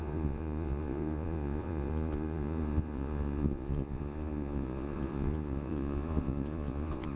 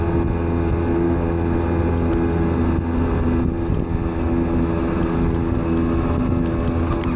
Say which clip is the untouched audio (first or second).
second